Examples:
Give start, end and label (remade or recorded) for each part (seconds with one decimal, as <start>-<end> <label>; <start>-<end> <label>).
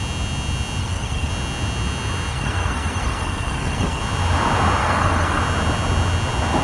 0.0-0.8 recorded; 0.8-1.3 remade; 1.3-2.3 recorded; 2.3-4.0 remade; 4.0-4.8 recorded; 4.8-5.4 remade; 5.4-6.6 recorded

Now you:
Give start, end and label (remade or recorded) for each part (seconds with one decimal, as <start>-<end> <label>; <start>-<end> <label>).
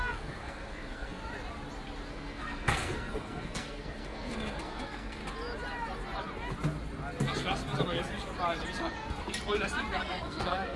0.0-1.2 remade; 1.2-2.1 recorded; 2.1-5.2 remade; 5.2-10.0 recorded; 10.0-10.8 remade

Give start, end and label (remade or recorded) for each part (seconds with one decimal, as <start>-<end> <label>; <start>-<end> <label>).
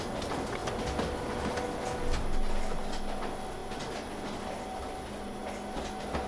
0.0-6.3 recorded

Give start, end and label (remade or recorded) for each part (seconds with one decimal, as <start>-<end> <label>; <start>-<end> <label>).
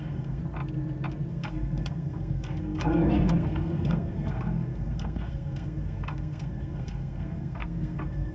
0.0-0.4 remade; 0.4-1.3 recorded; 1.3-8.3 remade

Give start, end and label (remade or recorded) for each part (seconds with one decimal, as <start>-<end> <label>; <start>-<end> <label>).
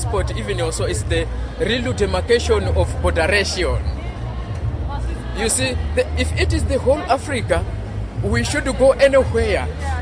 0.0-10.0 recorded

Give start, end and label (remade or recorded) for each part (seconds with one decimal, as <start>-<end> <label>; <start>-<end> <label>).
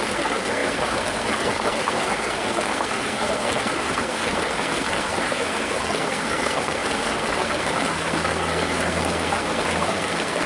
0.0-10.5 remade